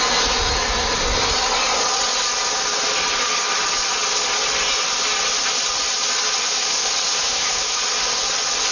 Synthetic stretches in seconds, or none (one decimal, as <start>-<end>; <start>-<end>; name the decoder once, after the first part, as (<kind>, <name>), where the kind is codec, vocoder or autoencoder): 7.2-7.8 (autoencoder, DAC-VAE)

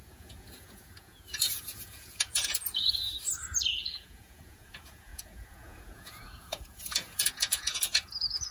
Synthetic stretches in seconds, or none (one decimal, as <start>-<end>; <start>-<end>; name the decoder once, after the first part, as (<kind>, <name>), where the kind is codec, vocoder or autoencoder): 0.0-3.1 (vocoder, Vocos); 3.7-8.5